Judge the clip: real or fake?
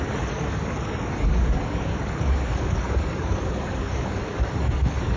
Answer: fake